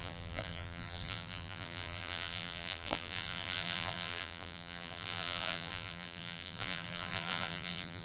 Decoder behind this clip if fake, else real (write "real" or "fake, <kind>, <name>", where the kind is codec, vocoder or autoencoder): fake, vocoder, BigVGAN v2